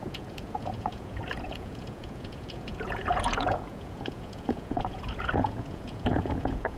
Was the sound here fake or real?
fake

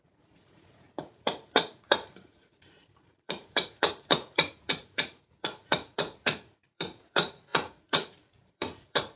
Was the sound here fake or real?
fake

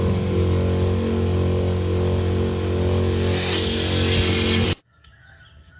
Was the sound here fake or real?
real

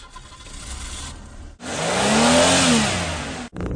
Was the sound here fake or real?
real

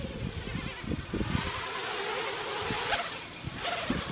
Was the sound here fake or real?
real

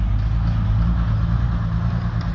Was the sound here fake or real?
real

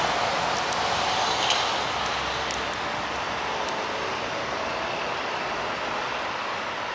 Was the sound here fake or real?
real